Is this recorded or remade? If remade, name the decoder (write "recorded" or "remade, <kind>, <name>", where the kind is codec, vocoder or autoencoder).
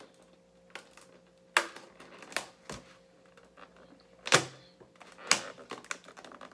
recorded